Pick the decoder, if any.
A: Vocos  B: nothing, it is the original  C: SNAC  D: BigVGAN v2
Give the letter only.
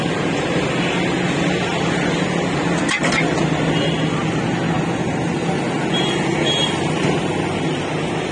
B